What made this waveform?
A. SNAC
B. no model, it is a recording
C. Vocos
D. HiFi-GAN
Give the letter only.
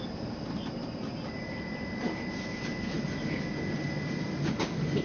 B